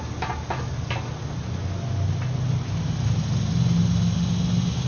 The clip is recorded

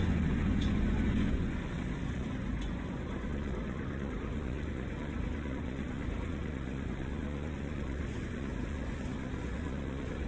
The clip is remade